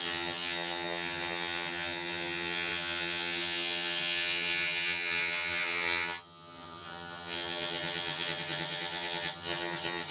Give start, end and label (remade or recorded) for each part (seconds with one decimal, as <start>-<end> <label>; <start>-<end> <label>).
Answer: 0.0-10.1 remade